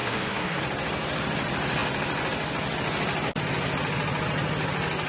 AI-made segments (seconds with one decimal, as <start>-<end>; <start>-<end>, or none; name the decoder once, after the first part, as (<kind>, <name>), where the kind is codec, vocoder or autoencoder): 0.0-0.6 (codec, SNAC)